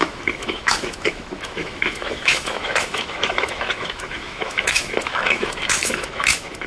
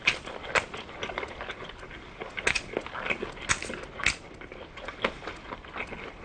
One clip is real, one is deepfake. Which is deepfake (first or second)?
first